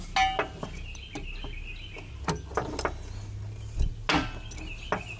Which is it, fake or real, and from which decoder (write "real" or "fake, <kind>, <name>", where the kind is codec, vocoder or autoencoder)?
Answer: real